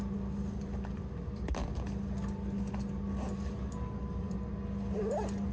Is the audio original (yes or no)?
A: yes